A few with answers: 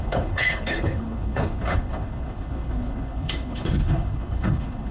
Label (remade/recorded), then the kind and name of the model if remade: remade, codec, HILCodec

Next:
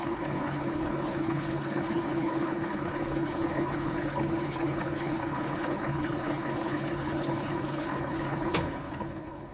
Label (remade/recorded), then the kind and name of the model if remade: remade, codec, HILCodec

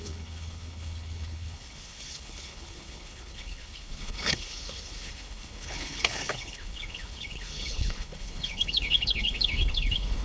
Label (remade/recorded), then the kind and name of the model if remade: remade, codec, HILCodec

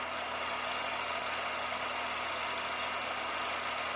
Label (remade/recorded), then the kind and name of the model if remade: recorded